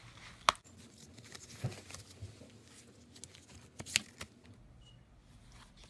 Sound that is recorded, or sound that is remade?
recorded